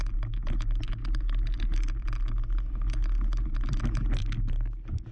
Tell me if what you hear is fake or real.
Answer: real